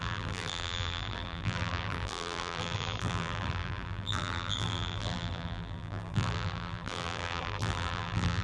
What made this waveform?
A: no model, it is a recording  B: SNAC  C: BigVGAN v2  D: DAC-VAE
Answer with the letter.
C